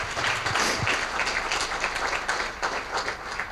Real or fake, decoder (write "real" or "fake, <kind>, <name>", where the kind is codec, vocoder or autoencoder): real